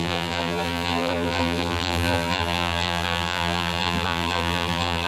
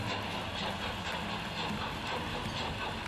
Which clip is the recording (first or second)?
second